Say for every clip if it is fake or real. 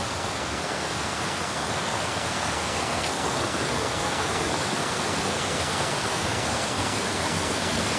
fake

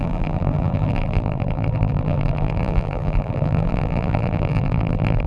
fake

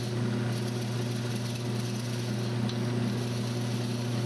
real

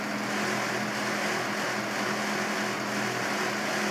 real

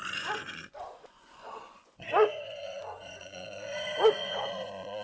fake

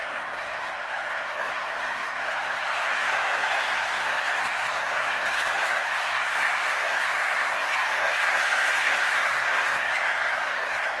fake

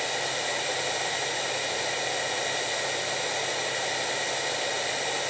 real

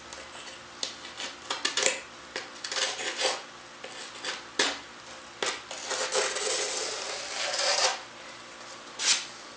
real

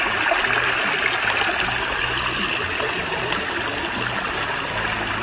real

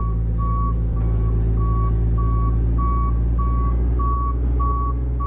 real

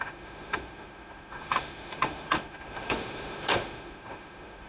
fake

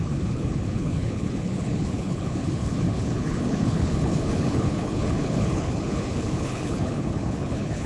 fake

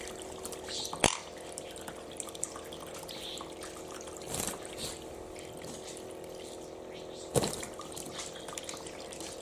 fake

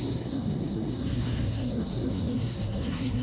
fake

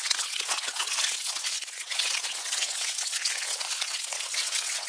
fake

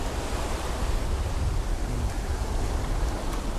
fake